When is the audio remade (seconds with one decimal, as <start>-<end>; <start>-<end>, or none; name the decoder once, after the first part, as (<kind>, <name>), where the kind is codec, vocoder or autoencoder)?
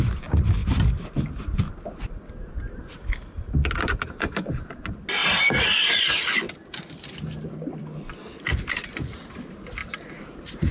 9.8-10.7 (vocoder, BigVGAN v2)